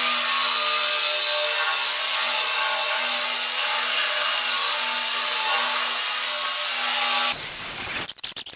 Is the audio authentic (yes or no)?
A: yes